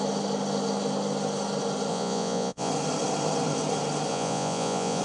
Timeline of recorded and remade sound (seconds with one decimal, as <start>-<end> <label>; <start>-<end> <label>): 0.0-1.9 recorded; 1.9-2.7 remade; 2.7-4.1 recorded; 4.1-5.0 remade